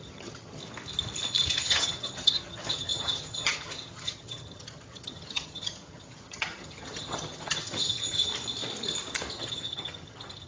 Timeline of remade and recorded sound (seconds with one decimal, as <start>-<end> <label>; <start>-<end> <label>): 0.0-0.6 remade; 0.6-1.5 recorded; 1.5-8.3 remade; 8.3-9.3 recorded; 9.3-10.5 remade